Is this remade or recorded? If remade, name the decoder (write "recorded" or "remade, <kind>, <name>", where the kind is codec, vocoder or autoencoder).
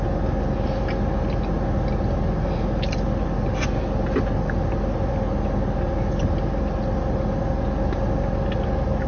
recorded